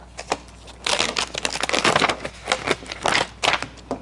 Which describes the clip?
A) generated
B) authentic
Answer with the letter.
B